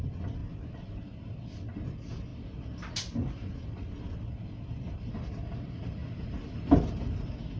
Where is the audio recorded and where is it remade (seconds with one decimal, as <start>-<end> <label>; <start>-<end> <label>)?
0.0-0.4 recorded; 0.4-1.3 remade; 1.3-6.0 recorded; 6.0-6.9 remade; 6.9-7.6 recorded